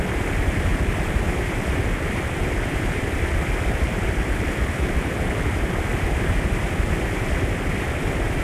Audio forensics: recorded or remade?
recorded